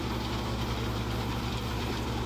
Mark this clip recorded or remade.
remade